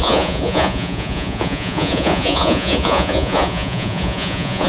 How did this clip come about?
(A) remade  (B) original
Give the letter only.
A